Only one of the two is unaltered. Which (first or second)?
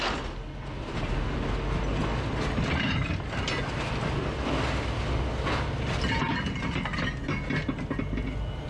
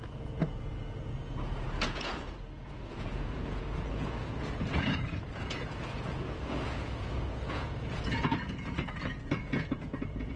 first